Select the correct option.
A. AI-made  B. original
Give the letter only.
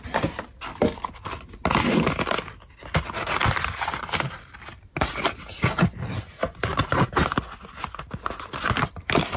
B